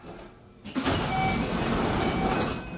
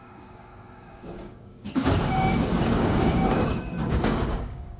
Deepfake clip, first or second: second